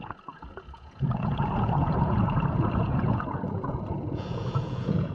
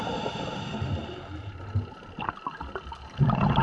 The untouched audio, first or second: second